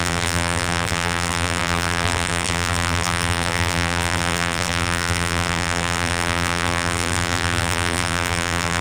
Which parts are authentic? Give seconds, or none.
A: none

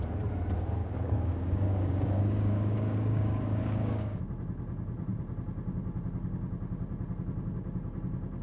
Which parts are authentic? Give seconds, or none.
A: 0.0-0.8; 4.2-8.4

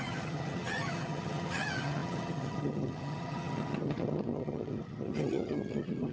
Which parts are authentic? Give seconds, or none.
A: none

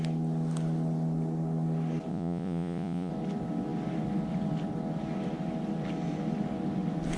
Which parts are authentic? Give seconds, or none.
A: 0.0-2.1; 3.1-7.2

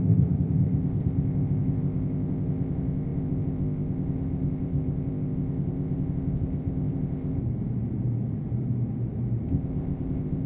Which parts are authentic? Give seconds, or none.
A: 7.4-9.5

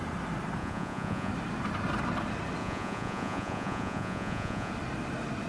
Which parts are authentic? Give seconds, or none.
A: 0.0-0.6; 1.3-2.6; 4.7-5.5